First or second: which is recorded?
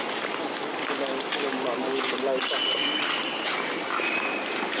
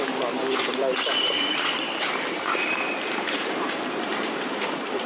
first